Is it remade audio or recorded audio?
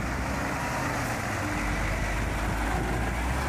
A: recorded